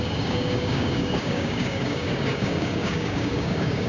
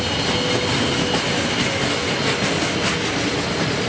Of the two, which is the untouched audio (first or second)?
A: second